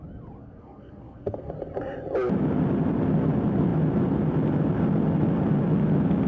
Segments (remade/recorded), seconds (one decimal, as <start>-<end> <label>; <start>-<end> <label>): 0.0-0.4 recorded; 0.4-1.5 remade; 1.5-6.3 recorded